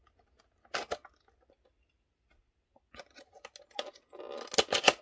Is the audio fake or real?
real